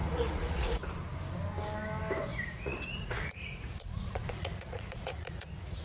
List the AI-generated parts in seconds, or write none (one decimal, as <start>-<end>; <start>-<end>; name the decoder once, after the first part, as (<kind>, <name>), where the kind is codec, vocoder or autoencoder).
0.0-0.8 (vocoder, Vocos); 2.3-5.8